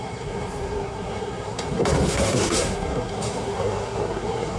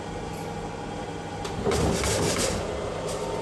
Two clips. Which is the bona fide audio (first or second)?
second